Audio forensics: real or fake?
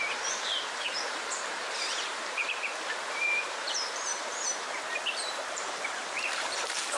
fake